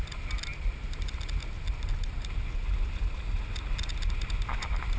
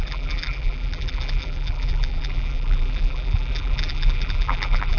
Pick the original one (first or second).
first